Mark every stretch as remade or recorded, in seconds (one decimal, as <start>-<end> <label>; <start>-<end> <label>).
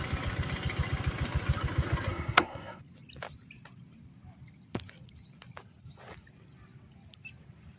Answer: 0.0-2.1 recorded; 2.1-2.8 remade; 2.8-7.8 recorded